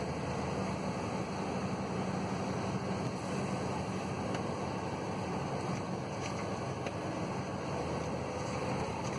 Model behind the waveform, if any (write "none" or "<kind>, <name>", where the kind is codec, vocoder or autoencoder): none